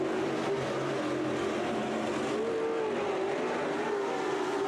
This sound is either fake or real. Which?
real